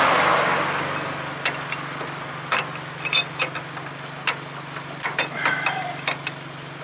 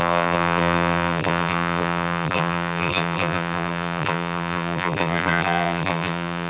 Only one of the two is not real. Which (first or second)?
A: second